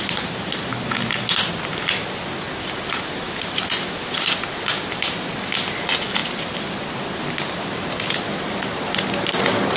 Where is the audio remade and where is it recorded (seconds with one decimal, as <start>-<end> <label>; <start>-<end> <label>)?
0.0-6.2 recorded; 6.2-7.2 remade; 7.2-9.8 recorded

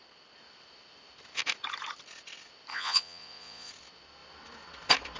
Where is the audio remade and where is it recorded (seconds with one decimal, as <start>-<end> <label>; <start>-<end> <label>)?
0.0-2.7 recorded; 2.7-3.7 remade; 3.7-5.2 recorded